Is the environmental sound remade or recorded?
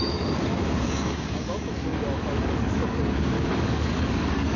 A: remade